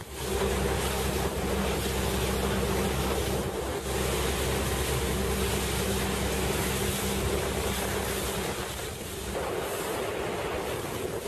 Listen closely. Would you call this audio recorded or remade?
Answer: recorded